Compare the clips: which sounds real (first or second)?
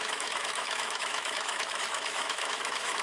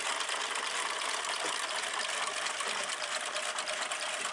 second